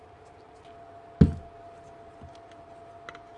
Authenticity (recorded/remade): recorded